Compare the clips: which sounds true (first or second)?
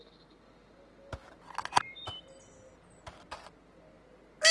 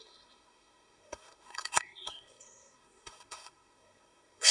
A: first